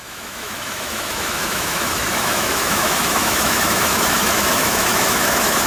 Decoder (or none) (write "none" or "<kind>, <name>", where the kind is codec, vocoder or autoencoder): autoencoder, DAC-VAE